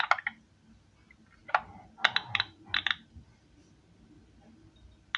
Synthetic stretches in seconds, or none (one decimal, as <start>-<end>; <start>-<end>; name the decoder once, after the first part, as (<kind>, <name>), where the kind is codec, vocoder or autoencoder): none